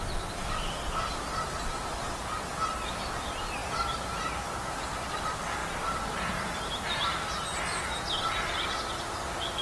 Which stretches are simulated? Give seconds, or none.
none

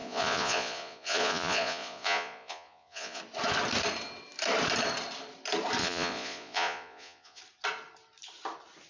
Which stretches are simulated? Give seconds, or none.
0.0-3.2 (vocoder, Vocos); 5.8-7.4

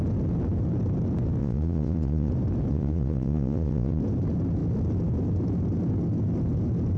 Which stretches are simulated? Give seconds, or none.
1.4-2.3 (vocoder, Vocos); 2.7-4.0

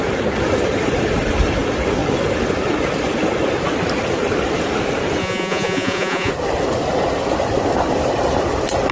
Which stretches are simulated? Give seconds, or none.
5.2-6.3 (vocoder, Vocos)